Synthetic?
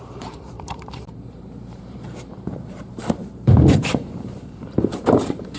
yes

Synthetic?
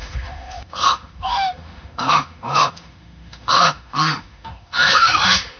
yes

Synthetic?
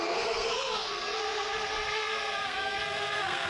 yes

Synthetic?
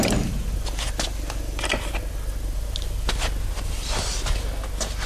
no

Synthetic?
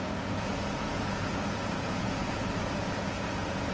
yes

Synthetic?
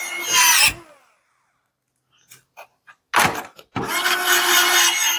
no